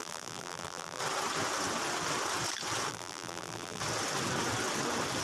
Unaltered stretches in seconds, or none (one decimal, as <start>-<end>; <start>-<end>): 1.0-2.9; 3.8-5.2